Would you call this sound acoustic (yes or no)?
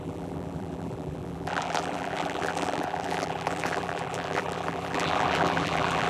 no